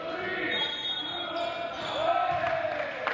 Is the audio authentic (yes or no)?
yes